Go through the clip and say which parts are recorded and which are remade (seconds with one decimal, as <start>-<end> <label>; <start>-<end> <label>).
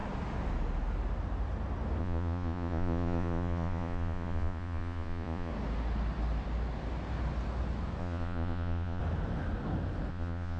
0.0-2.0 recorded; 2.0-5.5 remade; 5.5-8.0 recorded; 8.0-9.0 remade; 9.0-10.1 recorded; 10.1-10.6 remade